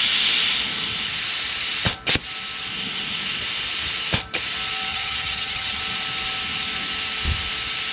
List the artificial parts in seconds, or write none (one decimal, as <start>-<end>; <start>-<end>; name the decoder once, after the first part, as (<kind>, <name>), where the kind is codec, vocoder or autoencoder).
4.9-5.8 (vocoder, HiFi-GAN)